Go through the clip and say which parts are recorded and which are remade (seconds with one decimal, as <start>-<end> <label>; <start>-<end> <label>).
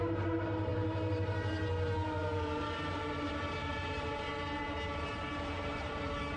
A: 0.0-4.3 remade; 4.3-5.0 recorded; 5.0-6.4 remade